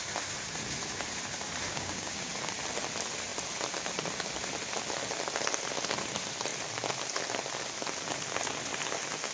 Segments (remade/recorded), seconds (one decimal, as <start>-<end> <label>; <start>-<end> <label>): 0.0-1.7 recorded; 1.7-2.3 remade; 2.3-9.3 recorded